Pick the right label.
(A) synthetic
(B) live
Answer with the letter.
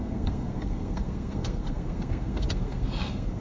A